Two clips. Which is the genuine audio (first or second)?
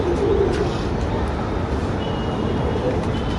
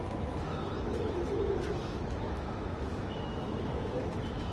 first